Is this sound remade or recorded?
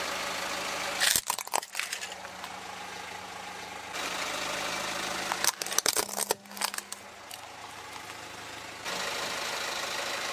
recorded